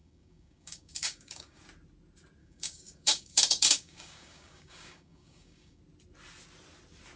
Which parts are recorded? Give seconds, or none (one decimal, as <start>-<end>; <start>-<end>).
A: 1.6-2.4; 5.8-7.2